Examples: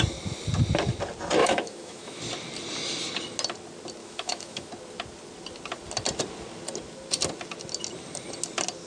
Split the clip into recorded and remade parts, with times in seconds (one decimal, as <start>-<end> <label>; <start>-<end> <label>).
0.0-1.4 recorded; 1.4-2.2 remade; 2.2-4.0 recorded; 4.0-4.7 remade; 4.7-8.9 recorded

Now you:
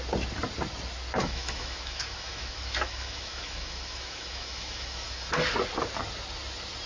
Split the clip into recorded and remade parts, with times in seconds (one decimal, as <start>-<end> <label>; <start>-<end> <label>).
0.0-1.2 recorded; 1.2-5.3 remade; 5.3-6.9 recorded

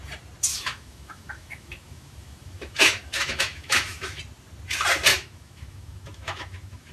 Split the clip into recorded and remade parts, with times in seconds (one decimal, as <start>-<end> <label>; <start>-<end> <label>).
0.0-0.5 recorded; 0.5-4.2 remade; 4.2-5.1 recorded; 5.1-6.9 remade

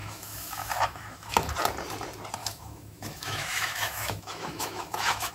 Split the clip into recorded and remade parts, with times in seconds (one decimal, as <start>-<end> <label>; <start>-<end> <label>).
0.0-1.5 remade; 1.5-2.4 recorded; 2.4-5.3 remade

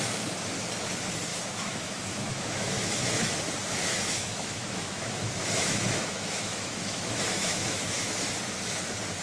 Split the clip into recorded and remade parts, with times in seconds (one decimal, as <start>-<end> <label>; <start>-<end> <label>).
0.0-1.3 recorded; 1.3-3.3 remade; 3.3-3.9 recorded; 3.9-8.3 remade; 8.3-9.2 recorded

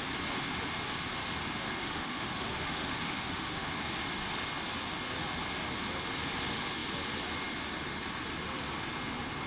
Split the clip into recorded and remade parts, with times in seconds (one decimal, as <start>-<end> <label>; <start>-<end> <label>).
0.0-1.8 recorded; 1.8-3.7 remade; 3.7-9.5 recorded

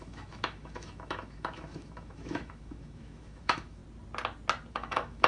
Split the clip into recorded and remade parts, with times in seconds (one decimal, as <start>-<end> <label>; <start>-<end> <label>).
0.0-3.8 remade; 3.8-4.7 recorded; 4.7-5.3 remade